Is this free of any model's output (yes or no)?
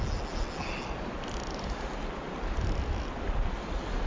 yes